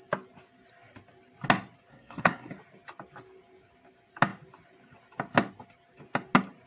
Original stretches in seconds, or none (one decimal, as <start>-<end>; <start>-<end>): 0.0-1.9; 2.5-6.7